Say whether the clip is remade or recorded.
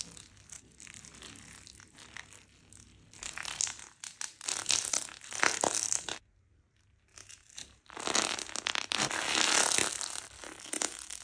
recorded